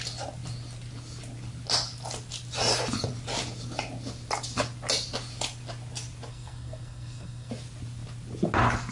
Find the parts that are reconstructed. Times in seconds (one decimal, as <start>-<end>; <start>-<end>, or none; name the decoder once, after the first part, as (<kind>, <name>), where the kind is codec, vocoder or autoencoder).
6.3-7.5 (codec, SNAC)